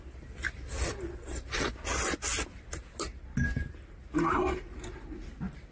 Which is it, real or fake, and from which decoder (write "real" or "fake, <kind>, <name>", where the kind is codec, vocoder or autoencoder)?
real